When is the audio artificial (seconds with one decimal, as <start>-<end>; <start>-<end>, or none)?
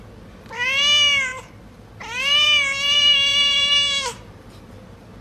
0.0-5.2